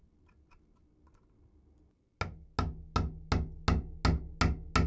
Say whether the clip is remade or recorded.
recorded